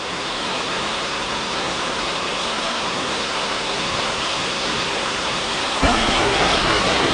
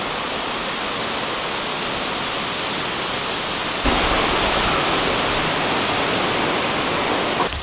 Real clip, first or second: second